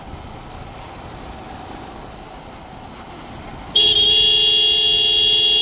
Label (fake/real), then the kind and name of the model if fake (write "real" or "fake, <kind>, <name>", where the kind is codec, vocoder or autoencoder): real